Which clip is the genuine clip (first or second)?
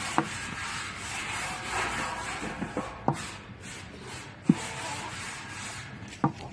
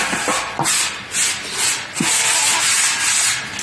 second